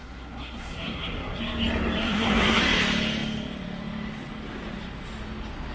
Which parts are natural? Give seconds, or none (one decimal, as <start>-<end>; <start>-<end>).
1.4-2.0; 2.6-5.7